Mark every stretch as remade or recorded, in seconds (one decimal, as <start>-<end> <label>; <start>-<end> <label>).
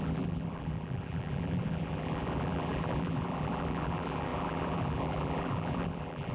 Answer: 0.0-6.3 remade